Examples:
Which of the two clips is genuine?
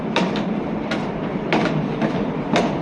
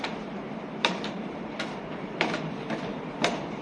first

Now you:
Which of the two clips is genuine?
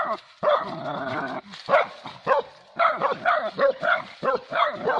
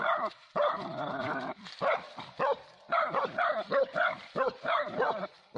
first